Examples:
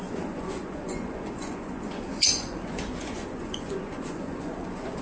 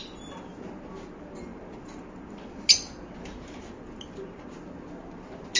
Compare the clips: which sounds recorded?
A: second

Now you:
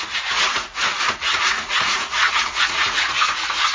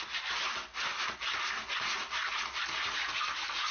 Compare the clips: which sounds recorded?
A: second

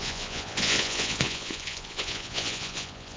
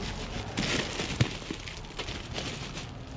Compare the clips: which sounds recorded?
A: second